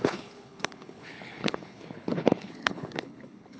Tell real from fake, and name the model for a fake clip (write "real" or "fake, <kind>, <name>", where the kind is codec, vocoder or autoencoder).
fake, codec, HILCodec